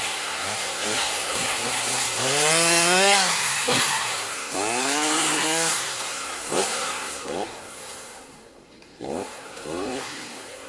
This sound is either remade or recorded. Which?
remade